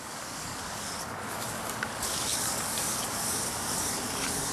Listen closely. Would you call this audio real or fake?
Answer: fake